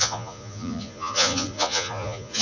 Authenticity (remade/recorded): remade